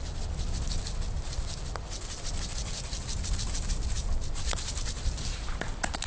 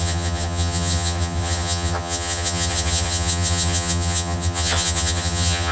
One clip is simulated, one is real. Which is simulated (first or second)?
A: second